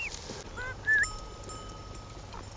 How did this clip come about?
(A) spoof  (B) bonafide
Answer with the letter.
B